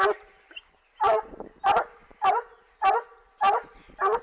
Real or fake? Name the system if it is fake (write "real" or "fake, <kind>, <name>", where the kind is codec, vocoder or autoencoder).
real